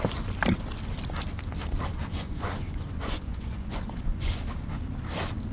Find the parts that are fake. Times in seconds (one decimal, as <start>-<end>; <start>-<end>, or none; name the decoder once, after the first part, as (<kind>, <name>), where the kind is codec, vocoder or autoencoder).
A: 2.1-4.4 (vocoder, Vocos)